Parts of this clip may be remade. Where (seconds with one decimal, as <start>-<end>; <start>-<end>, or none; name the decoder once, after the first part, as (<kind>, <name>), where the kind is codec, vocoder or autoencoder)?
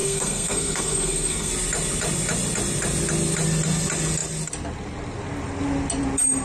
0.0-1.5 (codec, SNAC)